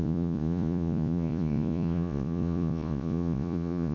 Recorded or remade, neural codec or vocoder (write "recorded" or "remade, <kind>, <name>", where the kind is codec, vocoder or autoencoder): remade, vocoder, Vocos